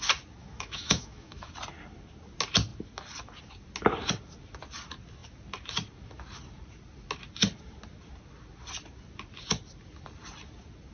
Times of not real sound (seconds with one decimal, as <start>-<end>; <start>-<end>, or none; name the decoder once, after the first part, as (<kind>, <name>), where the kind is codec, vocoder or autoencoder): 0.4-1.5 (autoencoder, DAC-VAE)